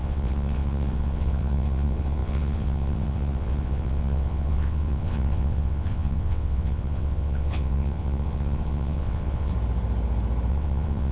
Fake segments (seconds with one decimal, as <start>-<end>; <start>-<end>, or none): 0.0-9.5; 10.5-11.1